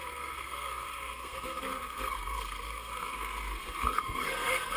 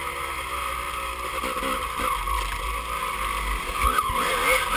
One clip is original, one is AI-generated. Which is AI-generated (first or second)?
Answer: first